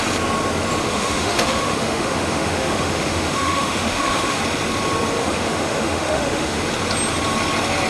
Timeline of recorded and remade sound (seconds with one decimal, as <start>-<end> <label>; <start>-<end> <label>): 0.0-0.8 recorded; 0.8-4.4 remade; 4.4-5.2 recorded; 5.2-6.6 remade; 6.6-7.9 recorded